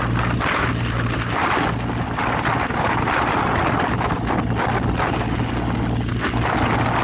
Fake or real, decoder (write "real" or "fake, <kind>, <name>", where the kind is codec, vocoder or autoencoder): real